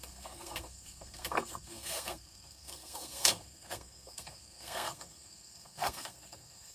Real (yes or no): no